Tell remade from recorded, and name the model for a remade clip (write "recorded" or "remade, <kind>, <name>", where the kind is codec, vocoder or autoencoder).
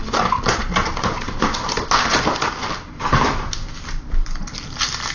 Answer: recorded